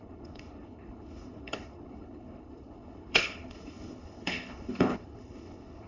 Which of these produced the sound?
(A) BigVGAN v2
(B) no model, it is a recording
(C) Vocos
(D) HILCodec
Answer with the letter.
D